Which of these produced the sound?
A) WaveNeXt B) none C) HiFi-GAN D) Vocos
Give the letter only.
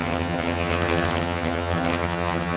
C